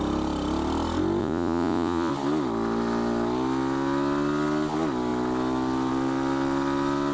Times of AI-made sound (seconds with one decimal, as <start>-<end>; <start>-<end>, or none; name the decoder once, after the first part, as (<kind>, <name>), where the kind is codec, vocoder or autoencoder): 1.2-2.1 (vocoder, Vocos)